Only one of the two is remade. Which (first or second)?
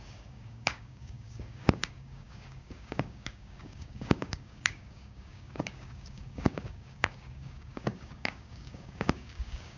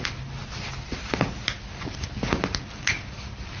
first